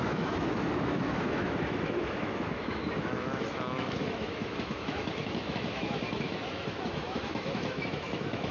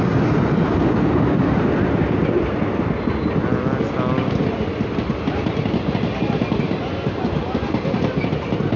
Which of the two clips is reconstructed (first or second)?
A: first